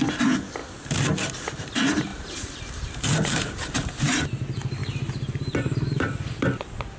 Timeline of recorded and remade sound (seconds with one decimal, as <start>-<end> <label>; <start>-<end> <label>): 0.0-2.1 recorded; 2.1-3.7 remade; 3.7-4.8 recorded; 4.8-6.3 remade; 6.3-7.0 recorded